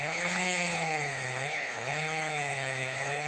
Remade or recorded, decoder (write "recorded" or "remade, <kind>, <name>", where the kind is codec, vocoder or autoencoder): remade, codec, HILCodec